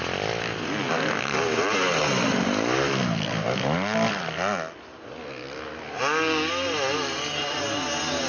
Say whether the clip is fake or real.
real